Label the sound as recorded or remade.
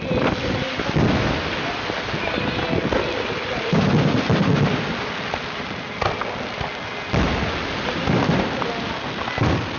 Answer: recorded